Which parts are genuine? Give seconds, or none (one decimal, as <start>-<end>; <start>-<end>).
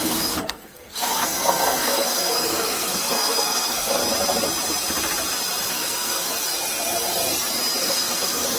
4.0-5.7; 6.3-7.8